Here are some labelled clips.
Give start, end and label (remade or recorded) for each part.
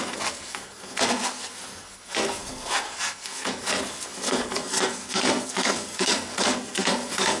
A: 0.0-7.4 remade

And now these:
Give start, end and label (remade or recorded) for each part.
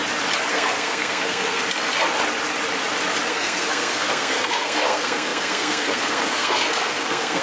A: 0.0-0.5 recorded; 0.5-1.6 remade; 1.6-3.3 recorded; 3.3-7.4 remade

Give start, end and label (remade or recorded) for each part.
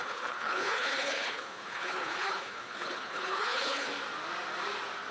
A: 0.0-3.9 remade; 3.9-5.1 recorded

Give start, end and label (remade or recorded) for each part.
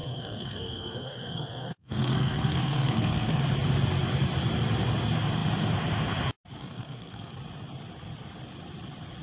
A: 0.0-3.4 remade; 3.4-6.6 recorded; 6.6-7.3 remade; 7.3-9.2 recorded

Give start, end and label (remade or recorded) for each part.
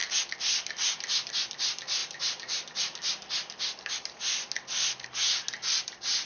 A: 0.0-1.3 recorded; 1.3-2.0 remade; 2.0-5.8 recorded; 5.8-6.3 remade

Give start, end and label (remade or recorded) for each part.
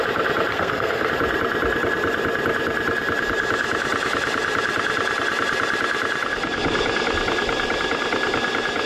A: 0.0-0.5 recorded; 0.5-1.1 remade; 1.1-8.9 recorded